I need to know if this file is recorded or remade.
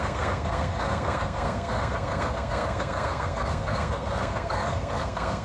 remade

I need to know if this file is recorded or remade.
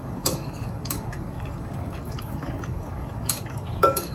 remade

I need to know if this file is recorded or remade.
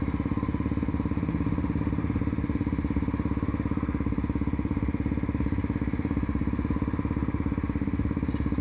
recorded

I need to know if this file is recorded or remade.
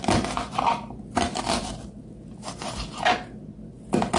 recorded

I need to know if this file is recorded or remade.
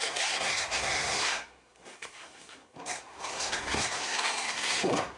remade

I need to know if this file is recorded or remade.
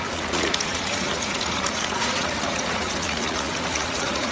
remade